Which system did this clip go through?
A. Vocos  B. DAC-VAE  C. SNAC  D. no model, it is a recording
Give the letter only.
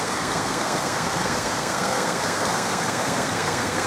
C